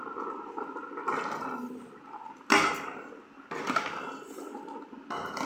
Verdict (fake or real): real